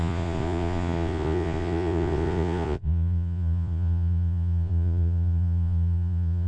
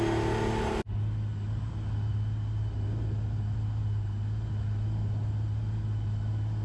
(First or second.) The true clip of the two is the second